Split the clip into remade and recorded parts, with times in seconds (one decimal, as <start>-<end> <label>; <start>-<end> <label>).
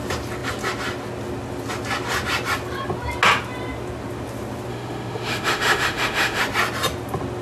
0.0-4.7 recorded; 4.7-6.4 remade; 6.4-7.4 recorded